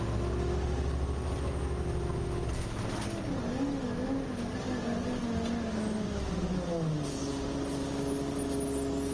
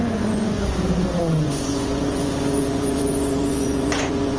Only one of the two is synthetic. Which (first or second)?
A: second